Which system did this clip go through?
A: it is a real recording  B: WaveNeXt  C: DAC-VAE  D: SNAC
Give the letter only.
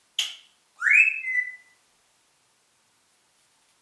A